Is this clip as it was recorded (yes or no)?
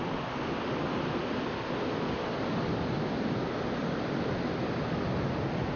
yes